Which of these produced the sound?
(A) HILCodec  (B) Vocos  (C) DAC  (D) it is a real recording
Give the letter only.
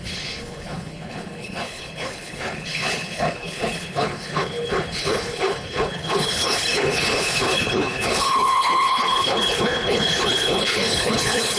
A